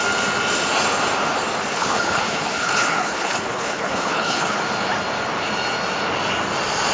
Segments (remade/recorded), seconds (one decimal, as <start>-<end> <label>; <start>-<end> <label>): 0.0-1.7 recorded; 1.7-4.6 remade; 4.6-6.9 recorded